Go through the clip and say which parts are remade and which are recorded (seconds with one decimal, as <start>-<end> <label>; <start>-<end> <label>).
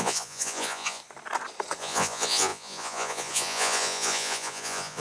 0.0-1.0 remade; 1.0-1.8 recorded; 1.8-5.0 remade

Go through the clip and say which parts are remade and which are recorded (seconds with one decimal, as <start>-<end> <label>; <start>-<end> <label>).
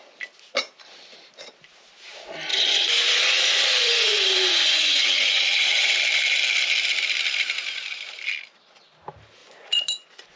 0.0-2.5 recorded; 2.5-5.9 remade; 5.9-9.4 recorded; 9.4-10.4 remade